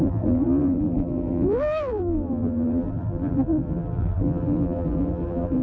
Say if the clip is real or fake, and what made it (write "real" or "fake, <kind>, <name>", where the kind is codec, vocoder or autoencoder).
fake, vocoder, BigVGAN v2